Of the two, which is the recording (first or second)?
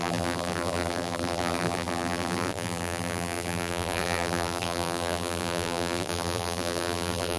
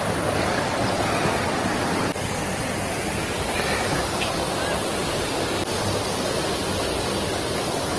second